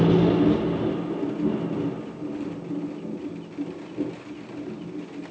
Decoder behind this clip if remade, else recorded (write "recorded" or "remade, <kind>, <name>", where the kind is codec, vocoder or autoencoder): recorded